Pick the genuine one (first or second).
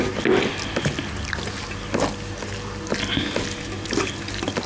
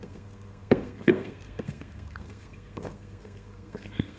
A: first